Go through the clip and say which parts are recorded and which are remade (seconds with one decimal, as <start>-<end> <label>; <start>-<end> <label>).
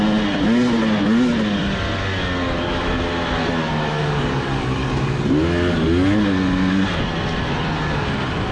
0.0-3.4 recorded; 3.4-5.2 remade; 5.2-8.5 recorded